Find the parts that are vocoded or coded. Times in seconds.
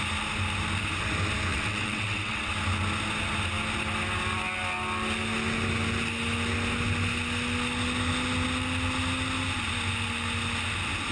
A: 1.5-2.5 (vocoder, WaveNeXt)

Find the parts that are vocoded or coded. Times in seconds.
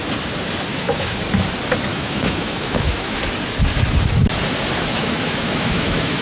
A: 0.7-1.2 (autoencoder, DAC-VAE); 1.9-3.2; 4.9-6.2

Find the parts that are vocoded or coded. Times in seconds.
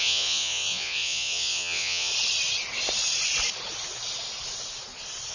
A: 0.0-2.1 (vocoder, Vocos)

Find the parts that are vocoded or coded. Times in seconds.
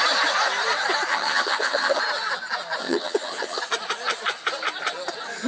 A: 1.1-2.0 (vocoder, HiFi-GAN); 2.8-3.6